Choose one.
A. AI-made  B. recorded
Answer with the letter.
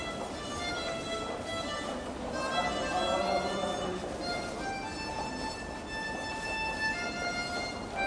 B